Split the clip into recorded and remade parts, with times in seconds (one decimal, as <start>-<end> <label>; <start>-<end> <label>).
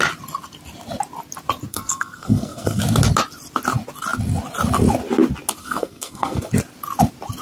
0.0-1.7 recorded; 1.7-2.8 remade; 2.8-5.6 recorded; 5.6-6.5 remade; 6.5-7.4 recorded